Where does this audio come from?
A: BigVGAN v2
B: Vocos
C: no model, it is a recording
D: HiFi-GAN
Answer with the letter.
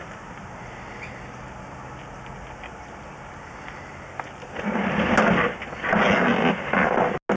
C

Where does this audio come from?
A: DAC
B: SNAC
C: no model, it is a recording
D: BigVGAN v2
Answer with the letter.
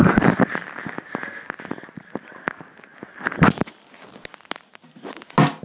C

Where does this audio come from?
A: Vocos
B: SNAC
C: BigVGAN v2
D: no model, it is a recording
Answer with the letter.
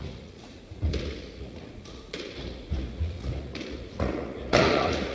A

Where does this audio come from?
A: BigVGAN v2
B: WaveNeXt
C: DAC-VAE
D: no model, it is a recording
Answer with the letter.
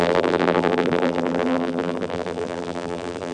A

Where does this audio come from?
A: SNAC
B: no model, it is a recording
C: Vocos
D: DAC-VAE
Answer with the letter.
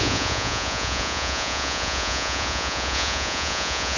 C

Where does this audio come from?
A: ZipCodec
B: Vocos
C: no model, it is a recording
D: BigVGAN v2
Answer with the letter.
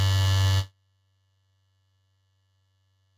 C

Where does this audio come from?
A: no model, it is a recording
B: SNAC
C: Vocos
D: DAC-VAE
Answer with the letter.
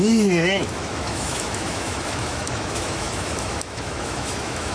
D